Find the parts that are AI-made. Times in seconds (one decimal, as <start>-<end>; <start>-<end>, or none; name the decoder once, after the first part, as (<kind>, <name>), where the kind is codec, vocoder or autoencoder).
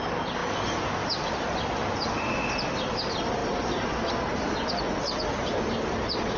none